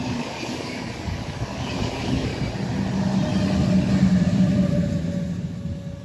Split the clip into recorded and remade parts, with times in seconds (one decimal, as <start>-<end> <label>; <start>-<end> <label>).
0.0-2.3 remade; 2.3-6.0 recorded